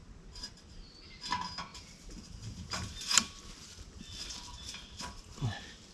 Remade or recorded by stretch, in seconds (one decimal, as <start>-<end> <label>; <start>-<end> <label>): 0.0-5.9 recorded